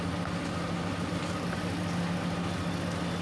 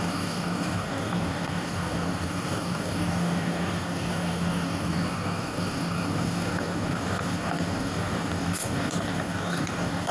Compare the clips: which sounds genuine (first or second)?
first